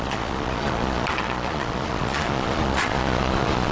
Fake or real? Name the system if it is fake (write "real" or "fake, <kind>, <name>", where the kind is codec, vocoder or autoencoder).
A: fake, vocoder, Vocos